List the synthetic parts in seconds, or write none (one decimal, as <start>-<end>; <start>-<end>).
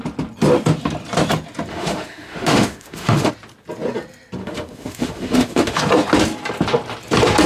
1.7-3.3; 4.4-5.8